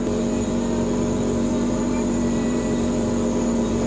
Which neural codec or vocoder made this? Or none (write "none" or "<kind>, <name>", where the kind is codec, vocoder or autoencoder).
vocoder, BigVGAN v2